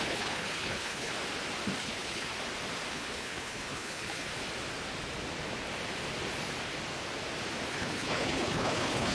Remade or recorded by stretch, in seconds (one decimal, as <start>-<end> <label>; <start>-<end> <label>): 0.0-1.1 remade; 1.1-1.8 recorded; 1.8-2.3 remade; 2.3-2.9 recorded; 2.9-4.3 remade; 4.3-7.7 recorded; 7.7-9.1 remade